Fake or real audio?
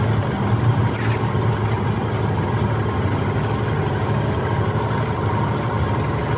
real